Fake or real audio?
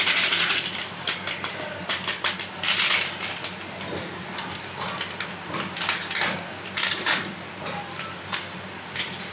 real